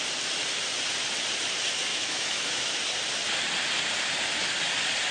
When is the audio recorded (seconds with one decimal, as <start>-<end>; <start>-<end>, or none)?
0.0-1.9; 2.8-5.1